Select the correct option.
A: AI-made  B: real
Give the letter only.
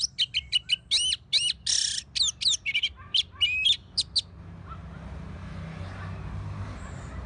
B